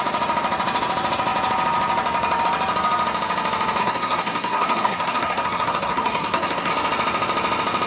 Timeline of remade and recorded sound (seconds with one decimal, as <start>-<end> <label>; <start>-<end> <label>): 0.0-3.8 recorded; 3.8-6.7 remade; 6.7-7.9 recorded